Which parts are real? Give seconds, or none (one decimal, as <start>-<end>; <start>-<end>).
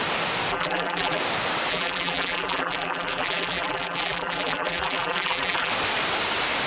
0.0-0.5; 1.2-1.7; 5.7-6.7